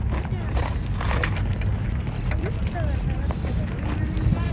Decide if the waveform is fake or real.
real